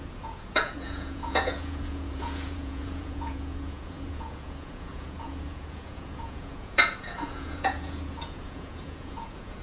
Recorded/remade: remade